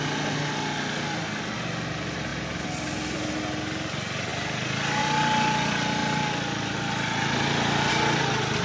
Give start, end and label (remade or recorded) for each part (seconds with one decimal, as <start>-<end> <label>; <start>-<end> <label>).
0.0-8.6 recorded